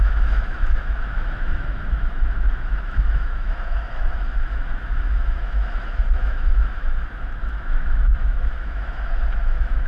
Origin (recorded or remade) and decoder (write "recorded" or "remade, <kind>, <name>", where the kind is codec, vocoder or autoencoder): remade, autoencoder, DAC-VAE